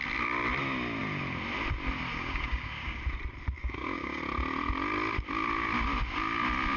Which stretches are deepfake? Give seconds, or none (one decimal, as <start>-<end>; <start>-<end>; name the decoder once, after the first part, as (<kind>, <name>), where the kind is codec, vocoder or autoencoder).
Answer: 2.1-3.0 (codec, DAC); 3.6-4.2

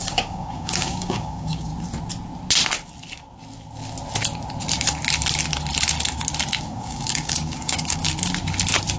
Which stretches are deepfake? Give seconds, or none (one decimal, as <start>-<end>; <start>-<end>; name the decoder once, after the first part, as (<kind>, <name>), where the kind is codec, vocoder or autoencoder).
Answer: 0.0-1.7 (codec, DAC); 6.6-8.0

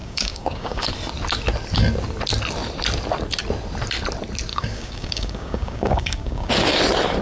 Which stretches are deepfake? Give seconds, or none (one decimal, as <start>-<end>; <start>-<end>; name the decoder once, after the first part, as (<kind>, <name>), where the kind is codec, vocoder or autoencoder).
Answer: 0.0-0.9 (codec, DAC); 4.5-6.5

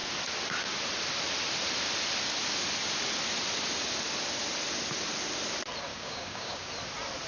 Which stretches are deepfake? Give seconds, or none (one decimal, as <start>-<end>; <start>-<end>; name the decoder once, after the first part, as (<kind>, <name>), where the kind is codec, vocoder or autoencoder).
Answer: 5.9-6.7 (codec, DAC)